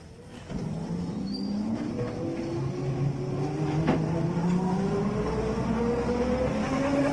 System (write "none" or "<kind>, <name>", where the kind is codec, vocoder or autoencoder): none